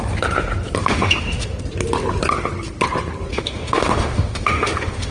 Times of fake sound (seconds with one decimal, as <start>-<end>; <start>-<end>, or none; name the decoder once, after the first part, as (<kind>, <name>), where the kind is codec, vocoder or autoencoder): 0.8-1.6 (autoencoder, DAC-VAE); 3.3-5.1